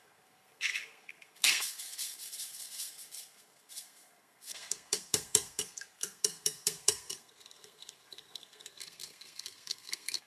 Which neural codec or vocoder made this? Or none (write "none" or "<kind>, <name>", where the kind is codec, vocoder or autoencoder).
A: codec, SNAC